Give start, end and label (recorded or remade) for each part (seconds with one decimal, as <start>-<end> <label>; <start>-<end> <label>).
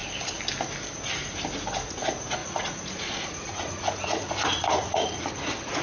0.0-1.8 recorded; 1.8-5.8 remade